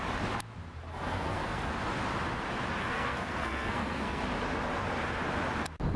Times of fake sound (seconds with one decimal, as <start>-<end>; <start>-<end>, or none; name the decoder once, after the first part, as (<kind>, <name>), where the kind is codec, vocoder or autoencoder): 0.9-1.7 (codec, SNAC); 2.8-4.2